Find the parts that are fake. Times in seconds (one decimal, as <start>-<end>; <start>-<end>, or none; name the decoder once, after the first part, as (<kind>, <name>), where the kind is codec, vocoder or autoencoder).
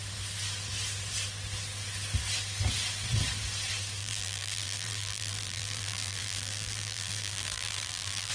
4.0-8.3 (vocoder, BigVGAN v2)